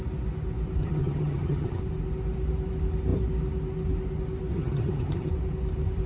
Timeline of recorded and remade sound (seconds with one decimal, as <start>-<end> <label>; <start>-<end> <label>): 0.0-0.8 recorded; 0.8-1.8 remade; 1.8-4.5 recorded; 4.5-5.3 remade; 5.3-6.1 recorded